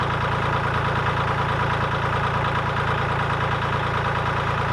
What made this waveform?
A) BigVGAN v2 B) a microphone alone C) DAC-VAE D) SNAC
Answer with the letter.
B